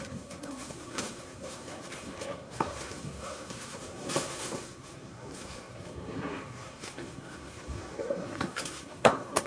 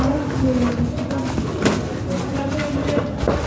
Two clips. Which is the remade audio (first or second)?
first